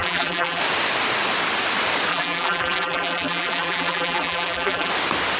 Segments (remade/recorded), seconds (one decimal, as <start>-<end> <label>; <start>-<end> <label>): 0.0-0.6 remade; 0.6-2.1 recorded; 2.1-4.9 remade; 4.9-5.4 recorded